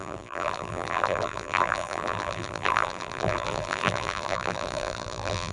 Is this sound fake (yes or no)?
yes